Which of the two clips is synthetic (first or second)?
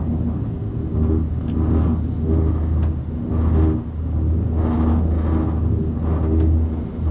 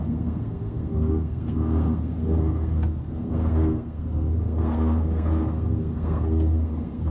second